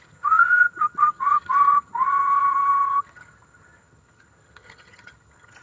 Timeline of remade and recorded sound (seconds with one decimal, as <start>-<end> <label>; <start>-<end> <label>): 0.0-5.6 remade